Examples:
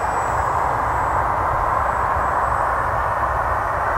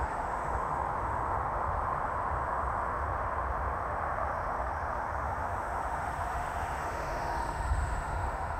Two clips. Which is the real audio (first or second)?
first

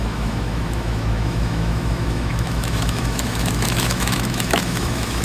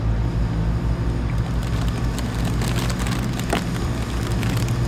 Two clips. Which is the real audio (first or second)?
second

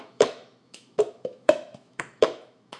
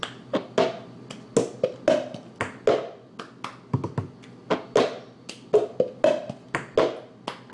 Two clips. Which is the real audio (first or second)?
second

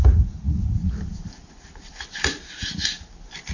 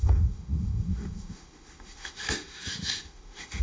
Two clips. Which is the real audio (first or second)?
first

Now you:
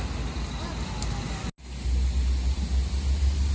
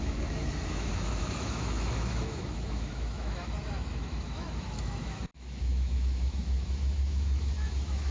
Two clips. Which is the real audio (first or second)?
first